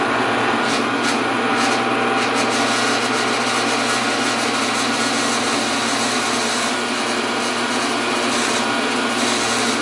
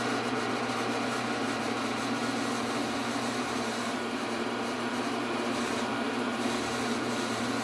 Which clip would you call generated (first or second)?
second